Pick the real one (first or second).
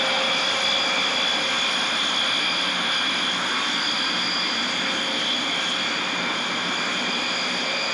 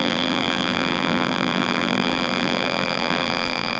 first